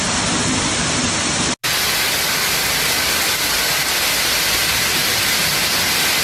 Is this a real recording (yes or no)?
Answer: yes